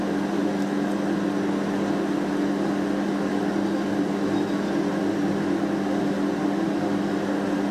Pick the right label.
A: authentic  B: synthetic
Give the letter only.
A